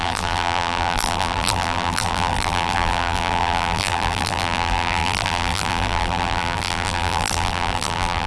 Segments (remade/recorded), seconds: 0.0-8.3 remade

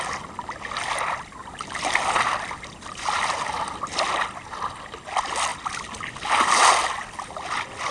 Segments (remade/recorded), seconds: 0.0-1.4 recorded; 1.4-4.1 remade; 4.1-7.9 recorded

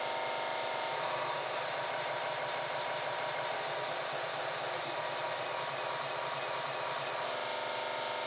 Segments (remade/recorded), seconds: 0.0-0.5 recorded; 0.5-3.6 remade; 3.6-8.3 recorded

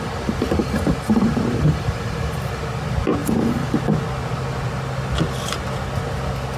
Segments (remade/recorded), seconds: 0.0-0.6 recorded; 0.6-2.6 remade; 2.6-3.2 recorded; 3.2-3.8 remade; 3.8-6.6 recorded

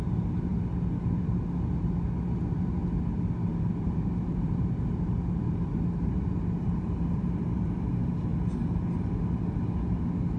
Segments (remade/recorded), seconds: 0.0-3.5 recorded; 3.5-7.7 remade; 7.7-10.4 recorded

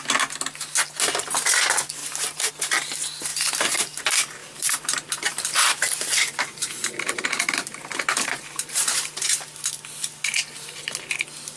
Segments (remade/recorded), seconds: 0.0-2.0 recorded; 2.0-2.5 remade; 2.5-3.3 recorded; 3.3-4.0 remade; 4.0-4.4 recorded; 4.4-9.1 remade; 9.1-11.6 recorded

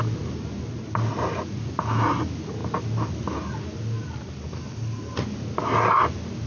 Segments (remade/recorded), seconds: 0.0-6.5 recorded